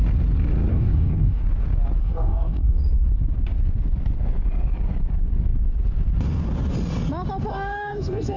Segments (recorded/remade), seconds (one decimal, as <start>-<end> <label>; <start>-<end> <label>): 0.0-0.7 recorded; 0.7-1.4 remade; 1.4-2.0 recorded; 2.0-2.8 remade; 2.8-7.5 recorded; 7.5-8.4 remade